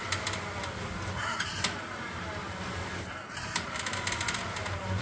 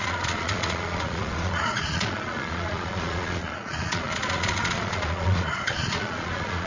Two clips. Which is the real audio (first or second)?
first